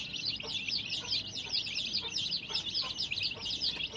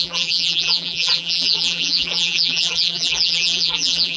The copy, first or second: second